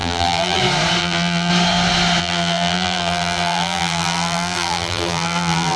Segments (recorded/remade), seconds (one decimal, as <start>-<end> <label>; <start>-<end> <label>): 0.0-0.6 remade; 0.6-1.0 recorded; 1.0-1.5 remade; 1.5-2.2 recorded; 2.2-5.8 remade